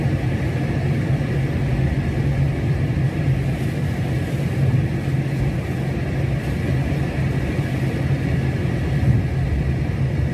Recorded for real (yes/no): yes